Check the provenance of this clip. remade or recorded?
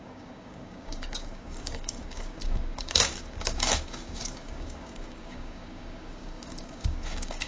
remade